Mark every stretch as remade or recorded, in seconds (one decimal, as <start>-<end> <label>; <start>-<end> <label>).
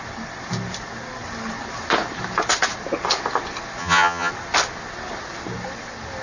0.0-3.8 recorded; 3.8-4.3 remade; 4.3-6.2 recorded